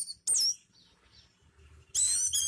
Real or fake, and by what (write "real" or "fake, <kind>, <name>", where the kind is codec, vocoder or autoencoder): real